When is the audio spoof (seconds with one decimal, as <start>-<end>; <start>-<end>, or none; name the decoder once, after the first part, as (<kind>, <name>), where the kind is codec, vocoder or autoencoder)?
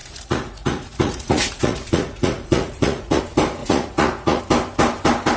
0.0-3.2 (vocoder, Vocos); 3.6-4.4